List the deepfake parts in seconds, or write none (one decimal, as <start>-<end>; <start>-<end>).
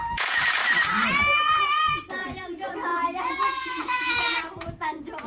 0.0-0.6; 1.4-5.3